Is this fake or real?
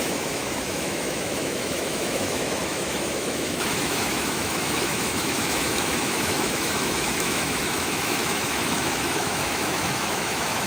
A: fake